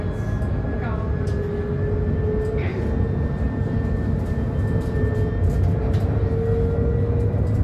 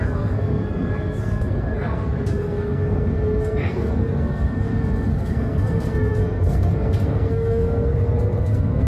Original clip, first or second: first